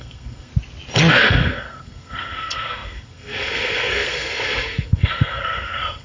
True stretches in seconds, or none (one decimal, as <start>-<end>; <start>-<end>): 0.5-1.1